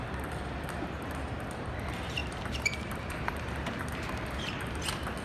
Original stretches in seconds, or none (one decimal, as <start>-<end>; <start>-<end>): 0.0-2.2; 4.8-5.2